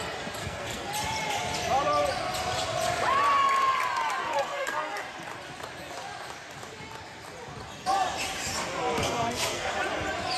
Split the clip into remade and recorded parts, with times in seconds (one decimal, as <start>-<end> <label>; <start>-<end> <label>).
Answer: 0.0-0.4 recorded; 0.4-0.9 remade; 0.9-4.2 recorded; 4.2-5.0 remade; 5.0-9.0 recorded; 9.0-9.7 remade; 9.7-10.4 recorded